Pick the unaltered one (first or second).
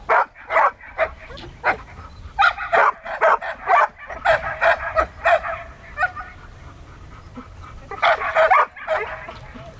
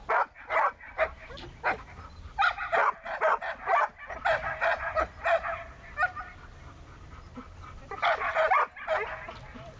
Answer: second